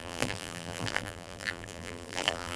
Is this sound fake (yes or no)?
yes